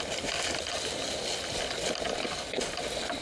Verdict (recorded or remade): recorded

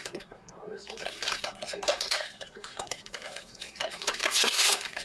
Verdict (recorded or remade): remade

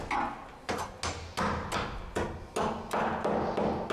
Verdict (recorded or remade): recorded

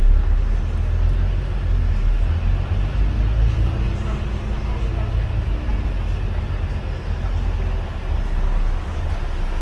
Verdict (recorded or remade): recorded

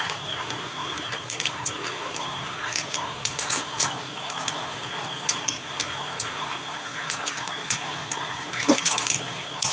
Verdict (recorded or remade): remade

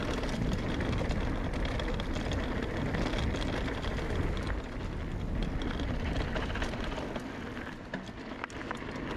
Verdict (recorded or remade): recorded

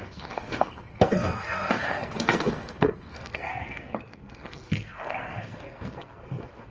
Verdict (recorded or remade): remade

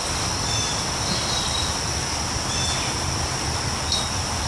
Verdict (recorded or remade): recorded